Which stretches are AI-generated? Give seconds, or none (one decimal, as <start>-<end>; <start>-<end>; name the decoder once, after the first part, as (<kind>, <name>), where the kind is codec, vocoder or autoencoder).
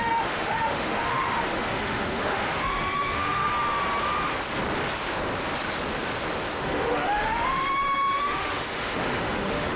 0.0-3.5 (autoencoder, DAC-VAE); 6.6-9.8